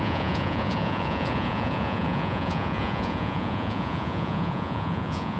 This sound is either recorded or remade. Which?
remade